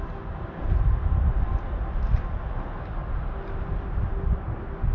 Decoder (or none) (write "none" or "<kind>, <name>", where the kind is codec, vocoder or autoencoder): none